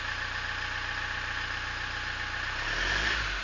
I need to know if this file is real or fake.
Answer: real